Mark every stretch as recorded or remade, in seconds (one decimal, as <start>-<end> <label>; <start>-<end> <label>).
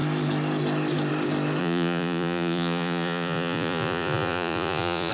0.0-1.6 recorded; 1.6-5.1 remade